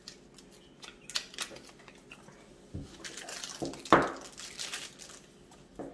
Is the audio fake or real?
real